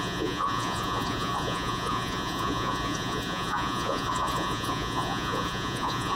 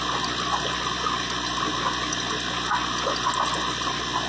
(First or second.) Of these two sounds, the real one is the second